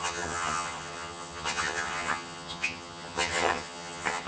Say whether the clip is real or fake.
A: fake